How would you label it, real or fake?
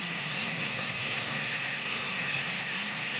fake